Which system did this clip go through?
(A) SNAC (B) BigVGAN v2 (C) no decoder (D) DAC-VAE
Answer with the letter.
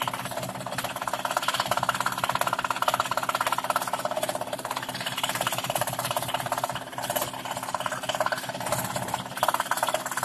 C